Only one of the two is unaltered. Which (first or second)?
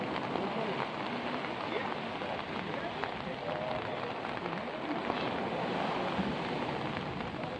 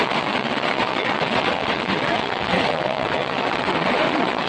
first